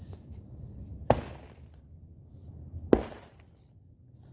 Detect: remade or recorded recorded